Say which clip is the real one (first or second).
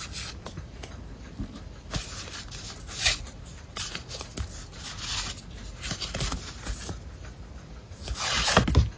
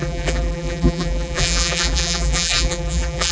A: first